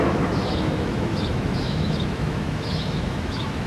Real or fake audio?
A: fake